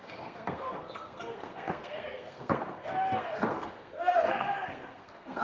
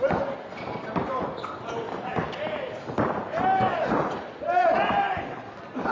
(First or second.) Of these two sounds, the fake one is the first